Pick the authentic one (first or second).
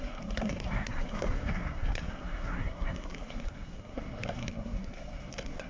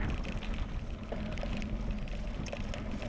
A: second